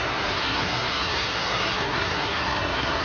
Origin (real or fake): fake